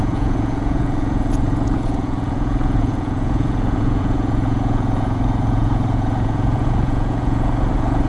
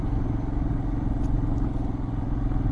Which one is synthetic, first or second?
first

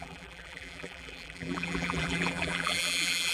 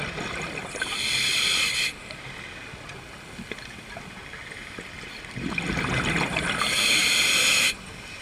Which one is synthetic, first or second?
first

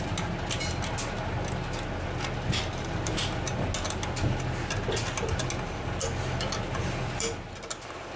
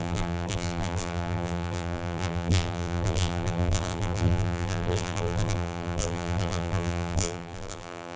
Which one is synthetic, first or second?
second